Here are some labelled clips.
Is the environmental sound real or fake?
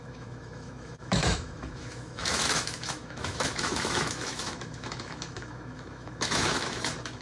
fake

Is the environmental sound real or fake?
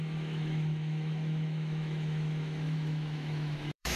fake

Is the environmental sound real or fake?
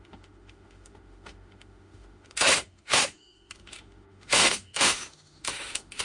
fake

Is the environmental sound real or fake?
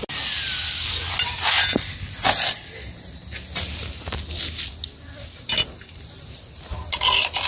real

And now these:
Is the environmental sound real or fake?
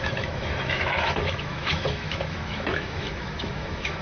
fake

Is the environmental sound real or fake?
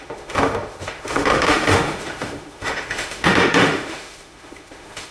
fake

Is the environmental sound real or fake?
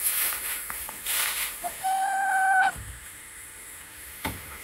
fake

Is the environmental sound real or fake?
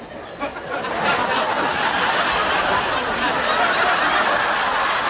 real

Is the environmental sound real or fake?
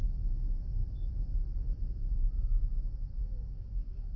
fake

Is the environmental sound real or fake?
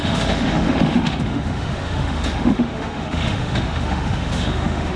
fake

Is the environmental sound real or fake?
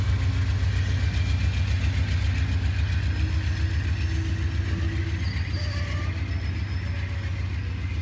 real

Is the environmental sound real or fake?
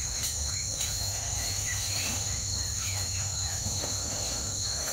fake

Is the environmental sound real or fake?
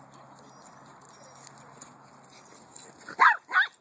real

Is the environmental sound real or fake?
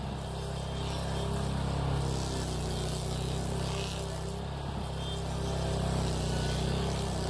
real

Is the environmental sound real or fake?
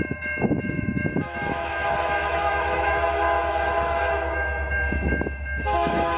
fake